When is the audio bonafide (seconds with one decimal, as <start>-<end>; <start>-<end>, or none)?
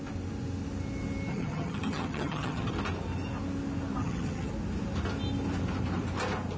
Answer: 0.0-1.3; 2.7-4.0; 4.5-6.6